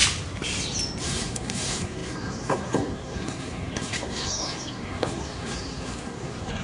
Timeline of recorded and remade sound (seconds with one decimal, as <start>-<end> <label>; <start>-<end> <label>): 0.0-1.0 recorded; 1.0-6.6 remade